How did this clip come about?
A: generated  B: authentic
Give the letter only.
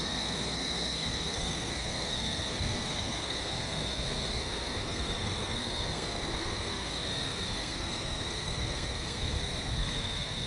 A